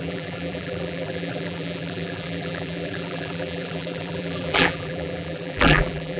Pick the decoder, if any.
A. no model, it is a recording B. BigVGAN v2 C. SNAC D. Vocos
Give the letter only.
B